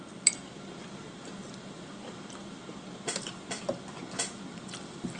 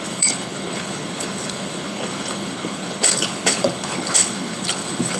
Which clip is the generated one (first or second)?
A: second